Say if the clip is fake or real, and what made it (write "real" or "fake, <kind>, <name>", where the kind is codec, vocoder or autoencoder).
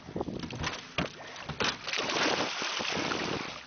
real